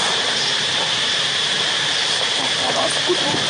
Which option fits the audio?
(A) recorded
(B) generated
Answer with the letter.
B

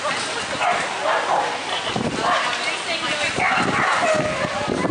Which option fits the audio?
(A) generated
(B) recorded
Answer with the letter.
B